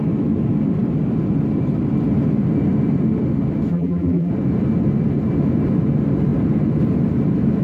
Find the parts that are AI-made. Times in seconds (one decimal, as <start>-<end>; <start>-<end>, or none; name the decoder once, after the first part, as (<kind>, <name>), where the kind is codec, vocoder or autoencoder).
3.7-4.3 (vocoder, BigVGAN v2)